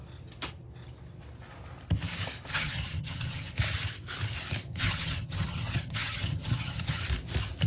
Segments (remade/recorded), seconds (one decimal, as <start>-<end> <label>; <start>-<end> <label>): 0.0-2.5 recorded; 2.5-3.5 remade; 3.5-4.7 recorded; 4.7-7.0 remade; 7.0-7.7 recorded